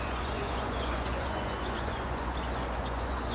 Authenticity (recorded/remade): remade